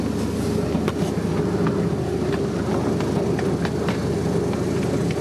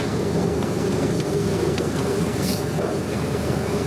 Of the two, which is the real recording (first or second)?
first